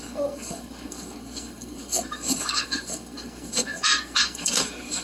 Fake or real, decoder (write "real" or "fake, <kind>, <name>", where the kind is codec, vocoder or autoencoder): fake, codec, SNAC